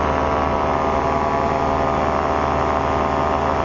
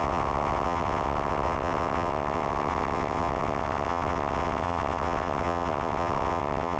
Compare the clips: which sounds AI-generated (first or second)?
second